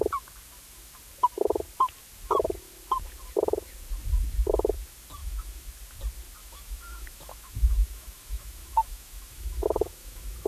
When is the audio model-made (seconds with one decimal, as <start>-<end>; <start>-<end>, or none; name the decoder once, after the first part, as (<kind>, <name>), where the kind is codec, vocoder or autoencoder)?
5.2-5.7 (autoencoder, DAC-VAE); 6.4-10.5